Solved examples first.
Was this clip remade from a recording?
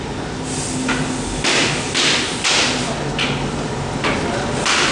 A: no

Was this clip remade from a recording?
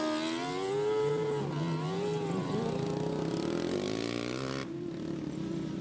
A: no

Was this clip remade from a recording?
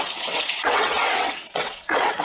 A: yes